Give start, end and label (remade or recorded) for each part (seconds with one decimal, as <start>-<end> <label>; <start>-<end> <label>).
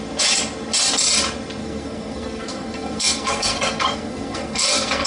0.0-1.6 recorded; 1.6-5.1 remade